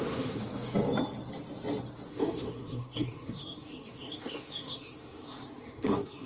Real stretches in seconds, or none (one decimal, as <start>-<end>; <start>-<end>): 0.4-2.1